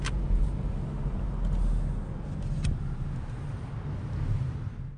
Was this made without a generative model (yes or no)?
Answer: yes